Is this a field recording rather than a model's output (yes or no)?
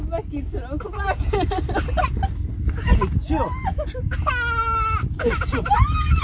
yes